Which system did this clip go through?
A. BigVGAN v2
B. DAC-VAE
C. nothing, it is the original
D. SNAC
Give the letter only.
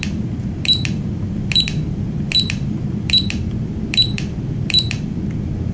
A